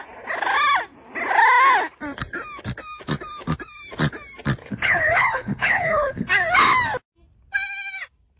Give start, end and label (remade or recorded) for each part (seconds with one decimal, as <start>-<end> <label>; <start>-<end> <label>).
0.0-4.6 recorded; 4.6-6.3 remade; 6.3-8.4 recorded